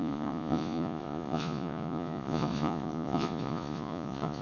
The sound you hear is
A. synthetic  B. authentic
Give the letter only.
A